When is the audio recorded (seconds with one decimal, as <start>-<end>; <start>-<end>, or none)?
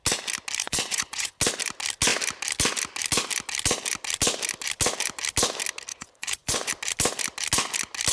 0.0-0.6; 1.4-5.9; 6.7-8.1